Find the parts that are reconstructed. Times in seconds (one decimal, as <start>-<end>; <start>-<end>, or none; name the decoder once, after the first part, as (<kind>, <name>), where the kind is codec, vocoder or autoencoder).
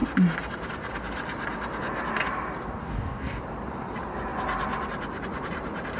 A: 2.8-3.4 (codec, DAC)